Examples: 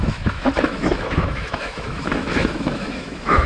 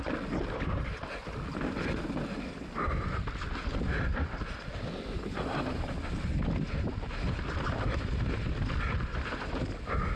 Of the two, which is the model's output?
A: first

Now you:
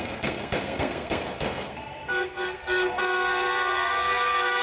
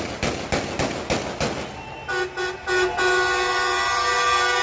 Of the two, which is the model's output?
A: first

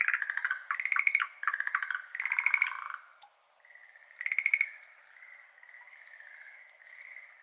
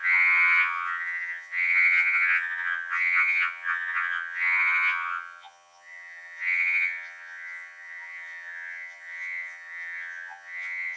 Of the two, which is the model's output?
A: second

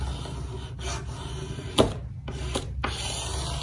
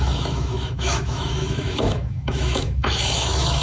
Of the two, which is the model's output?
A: second